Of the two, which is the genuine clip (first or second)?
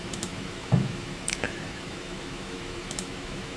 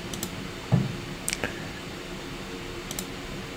second